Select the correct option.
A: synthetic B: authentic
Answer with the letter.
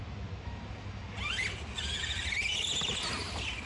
B